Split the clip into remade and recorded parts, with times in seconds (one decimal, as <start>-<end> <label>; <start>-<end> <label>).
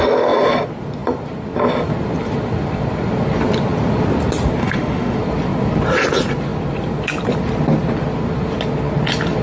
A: 0.0-4.6 recorded; 4.6-5.2 remade; 5.2-9.4 recorded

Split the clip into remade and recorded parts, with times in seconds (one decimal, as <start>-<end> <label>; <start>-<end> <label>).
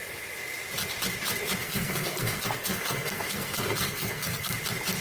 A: 0.0-1.6 recorded; 1.6-4.6 remade; 4.6-5.0 recorded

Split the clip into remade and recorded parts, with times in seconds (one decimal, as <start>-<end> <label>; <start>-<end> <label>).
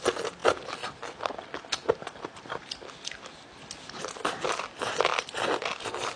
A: 0.0-6.2 recorded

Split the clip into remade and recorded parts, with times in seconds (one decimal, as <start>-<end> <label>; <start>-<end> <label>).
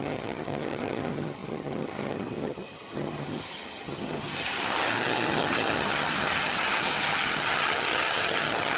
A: 0.0-8.8 remade